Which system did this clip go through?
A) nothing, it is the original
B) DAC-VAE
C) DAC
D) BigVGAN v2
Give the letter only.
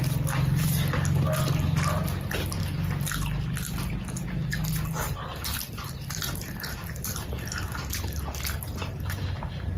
A